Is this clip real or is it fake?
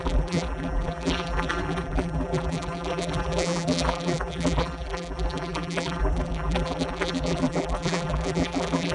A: fake